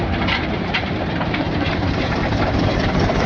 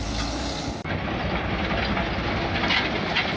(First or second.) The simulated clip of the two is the first